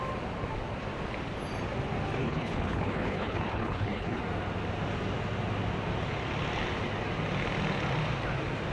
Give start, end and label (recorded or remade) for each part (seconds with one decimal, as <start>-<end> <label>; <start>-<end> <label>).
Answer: 0.0-2.2 recorded; 2.2-4.2 remade; 4.2-8.7 recorded